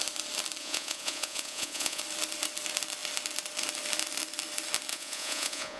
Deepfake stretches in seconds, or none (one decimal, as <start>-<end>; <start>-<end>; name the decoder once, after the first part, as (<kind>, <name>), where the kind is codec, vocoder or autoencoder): 0.6-2.0 (vocoder, Vocos); 4.9-5.8